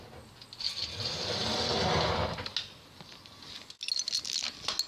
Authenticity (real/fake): real